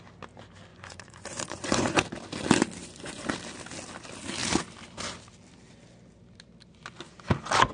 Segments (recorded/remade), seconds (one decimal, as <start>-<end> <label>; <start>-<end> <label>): 0.0-0.7 recorded; 0.7-2.0 remade; 2.0-2.8 recorded; 2.8-3.3 remade; 3.3-7.7 recorded